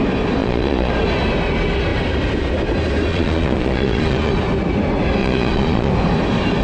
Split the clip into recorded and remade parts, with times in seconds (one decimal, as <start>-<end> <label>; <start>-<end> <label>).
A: 0.0-0.4 recorded; 0.4-0.9 remade; 0.9-3.1 recorded; 3.1-4.3 remade; 4.3-5.2 recorded; 5.2-5.9 remade; 5.9-6.6 recorded